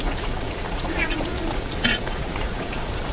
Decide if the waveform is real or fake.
fake